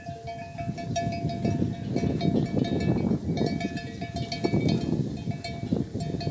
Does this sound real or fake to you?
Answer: real